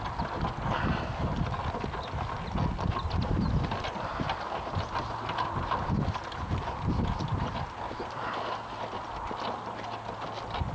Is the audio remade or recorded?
recorded